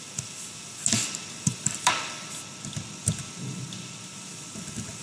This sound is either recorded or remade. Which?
recorded